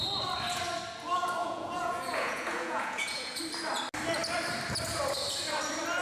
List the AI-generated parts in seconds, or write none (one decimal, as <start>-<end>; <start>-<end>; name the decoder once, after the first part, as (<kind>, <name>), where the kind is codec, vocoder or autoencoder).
1.4-3.4 (vocoder, Vocos)